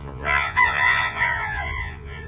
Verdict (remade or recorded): remade